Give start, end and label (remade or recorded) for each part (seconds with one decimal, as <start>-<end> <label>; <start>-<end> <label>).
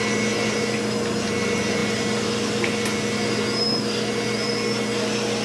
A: 0.0-5.4 recorded